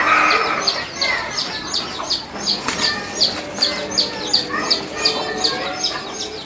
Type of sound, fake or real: real